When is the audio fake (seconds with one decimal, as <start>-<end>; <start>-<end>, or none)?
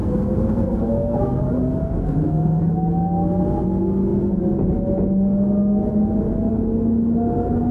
0.0-1.4; 1.8-2.6